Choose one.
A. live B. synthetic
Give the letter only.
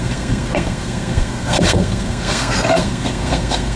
B